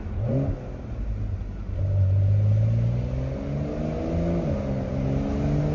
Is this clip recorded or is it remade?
recorded